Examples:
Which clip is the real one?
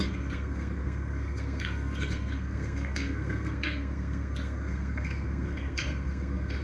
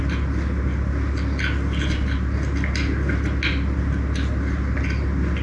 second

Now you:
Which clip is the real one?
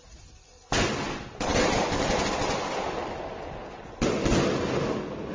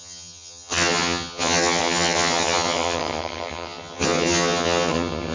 first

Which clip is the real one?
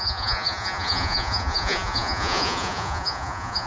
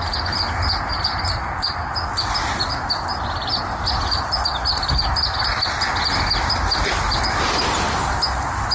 second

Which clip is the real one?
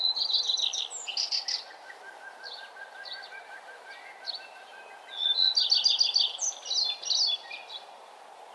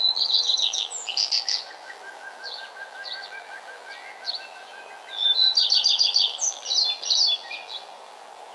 first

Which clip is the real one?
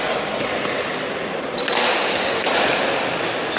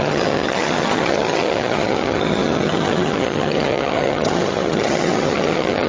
first